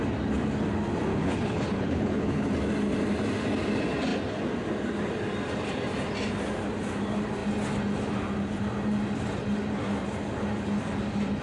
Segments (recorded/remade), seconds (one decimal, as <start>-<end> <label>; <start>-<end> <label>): 0.0-1.1 recorded; 1.1-2.5 remade; 2.5-11.4 recorded